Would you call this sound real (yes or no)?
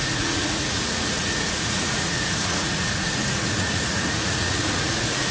no